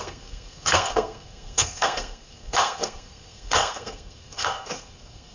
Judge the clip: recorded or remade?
remade